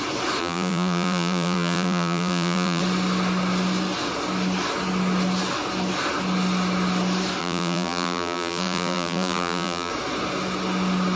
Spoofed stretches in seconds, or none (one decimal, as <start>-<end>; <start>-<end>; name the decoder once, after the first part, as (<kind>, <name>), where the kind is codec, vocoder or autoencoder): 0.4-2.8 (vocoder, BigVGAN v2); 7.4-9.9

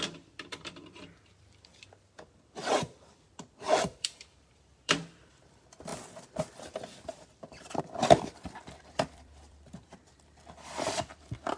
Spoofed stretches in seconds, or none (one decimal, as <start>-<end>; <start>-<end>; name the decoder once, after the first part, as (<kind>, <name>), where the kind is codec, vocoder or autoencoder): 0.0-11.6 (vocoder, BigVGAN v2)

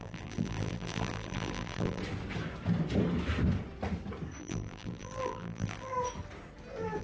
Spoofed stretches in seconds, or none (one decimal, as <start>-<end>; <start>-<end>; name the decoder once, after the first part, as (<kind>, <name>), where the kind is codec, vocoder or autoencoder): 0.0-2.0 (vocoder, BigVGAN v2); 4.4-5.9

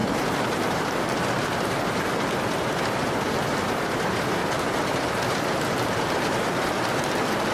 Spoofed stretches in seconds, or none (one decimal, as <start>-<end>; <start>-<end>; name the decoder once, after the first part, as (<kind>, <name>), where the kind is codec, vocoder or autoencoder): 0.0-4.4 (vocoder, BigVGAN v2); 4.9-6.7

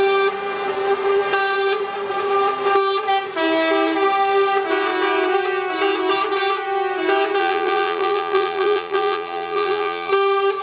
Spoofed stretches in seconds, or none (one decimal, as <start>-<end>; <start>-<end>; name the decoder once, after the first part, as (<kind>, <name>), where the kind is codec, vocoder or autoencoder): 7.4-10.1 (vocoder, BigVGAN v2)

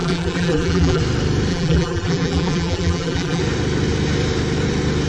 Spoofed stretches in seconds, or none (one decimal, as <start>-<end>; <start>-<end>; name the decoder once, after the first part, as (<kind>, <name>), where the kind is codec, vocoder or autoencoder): 0.0-1.0 (vocoder, BigVGAN v2); 1.5-3.4